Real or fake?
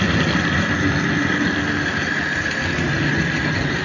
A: real